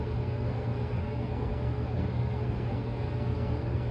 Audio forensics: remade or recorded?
remade